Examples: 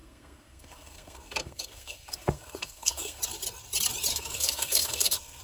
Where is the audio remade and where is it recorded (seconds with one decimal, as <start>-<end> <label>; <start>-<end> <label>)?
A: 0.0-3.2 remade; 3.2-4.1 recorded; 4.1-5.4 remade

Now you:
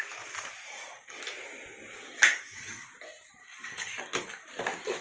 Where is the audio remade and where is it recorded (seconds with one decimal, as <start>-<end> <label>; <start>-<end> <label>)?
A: 0.0-0.7 recorded; 0.7-1.2 remade; 1.2-2.3 recorded; 2.3-2.9 remade; 2.9-3.4 recorded; 3.4-4.5 remade; 4.5-5.0 recorded

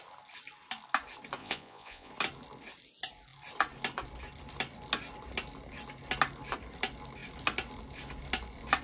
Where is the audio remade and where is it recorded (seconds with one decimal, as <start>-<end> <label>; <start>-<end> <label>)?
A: 0.0-1.4 recorded; 1.4-2.1 remade; 2.1-8.8 recorded